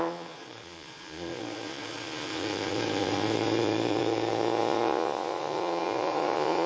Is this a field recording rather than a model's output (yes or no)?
no